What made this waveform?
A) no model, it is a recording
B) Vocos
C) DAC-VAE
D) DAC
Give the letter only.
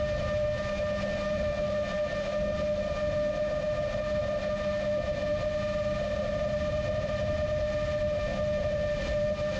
A